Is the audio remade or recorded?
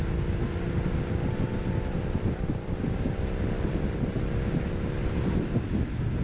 recorded